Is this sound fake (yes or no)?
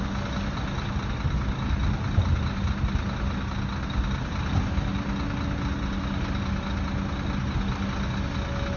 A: no